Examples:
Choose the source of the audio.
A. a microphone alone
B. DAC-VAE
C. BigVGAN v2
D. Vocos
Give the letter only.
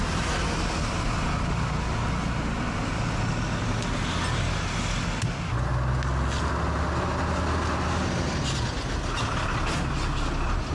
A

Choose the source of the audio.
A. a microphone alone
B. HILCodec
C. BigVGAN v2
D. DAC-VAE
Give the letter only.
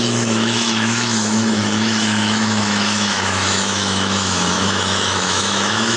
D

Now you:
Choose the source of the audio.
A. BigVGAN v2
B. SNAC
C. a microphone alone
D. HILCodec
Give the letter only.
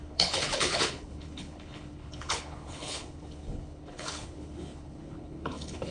D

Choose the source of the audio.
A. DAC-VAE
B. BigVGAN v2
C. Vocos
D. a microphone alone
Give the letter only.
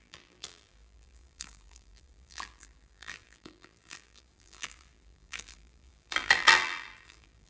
B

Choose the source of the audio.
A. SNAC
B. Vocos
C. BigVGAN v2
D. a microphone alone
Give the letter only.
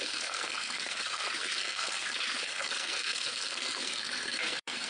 A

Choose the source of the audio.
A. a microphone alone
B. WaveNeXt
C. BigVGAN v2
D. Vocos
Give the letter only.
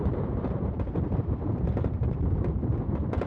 C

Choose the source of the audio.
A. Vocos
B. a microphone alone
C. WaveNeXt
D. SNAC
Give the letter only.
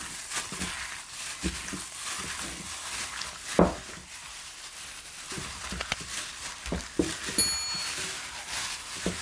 B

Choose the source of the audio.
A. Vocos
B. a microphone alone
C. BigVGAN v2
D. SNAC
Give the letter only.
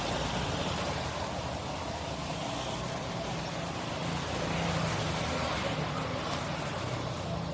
B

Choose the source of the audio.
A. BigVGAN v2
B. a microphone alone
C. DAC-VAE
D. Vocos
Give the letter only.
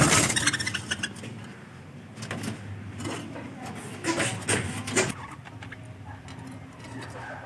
B